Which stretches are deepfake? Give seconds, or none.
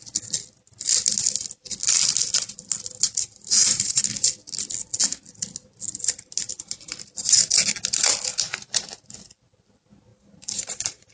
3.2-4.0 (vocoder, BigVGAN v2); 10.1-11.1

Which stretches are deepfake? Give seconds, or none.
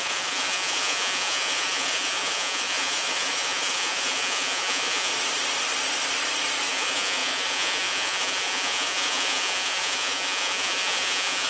0.0-5.1 (vocoder, Vocos); 6.7-11.5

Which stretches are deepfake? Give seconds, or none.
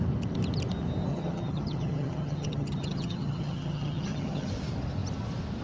1.1-4.5 (vocoder, HiFi-GAN)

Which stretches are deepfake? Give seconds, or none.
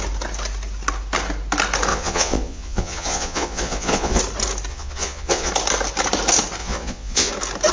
1.9-4.2 (vocoder, Vocos); 4.7-5.5; 6.6-7.3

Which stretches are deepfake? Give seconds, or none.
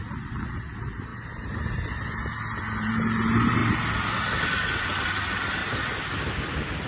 none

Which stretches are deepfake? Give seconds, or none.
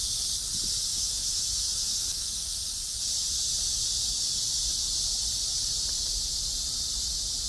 0.9-2.6 (autoencoder, DAC-VAE)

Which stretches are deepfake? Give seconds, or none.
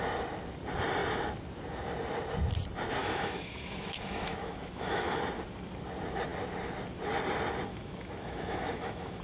3.0-5.2 (autoencoder, DAC-VAE); 7.7-9.2